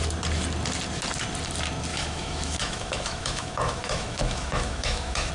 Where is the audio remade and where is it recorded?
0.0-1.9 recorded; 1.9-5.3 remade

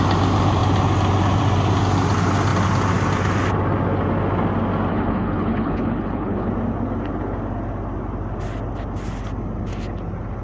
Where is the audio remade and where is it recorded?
0.0-4.9 recorded; 4.9-6.5 remade; 6.5-10.4 recorded

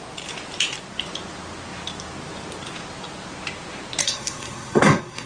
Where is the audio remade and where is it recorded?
0.0-4.0 recorded; 4.0-5.3 remade

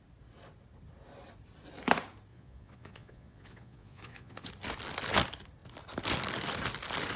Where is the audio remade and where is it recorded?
0.0-2.3 recorded; 2.3-4.5 remade; 4.5-7.2 recorded